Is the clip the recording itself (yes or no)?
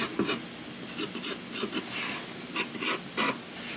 yes